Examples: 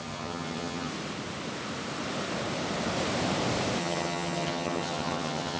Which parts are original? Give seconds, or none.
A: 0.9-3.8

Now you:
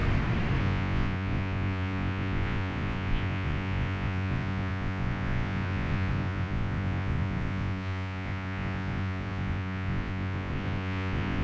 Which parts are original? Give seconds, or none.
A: 0.0-0.6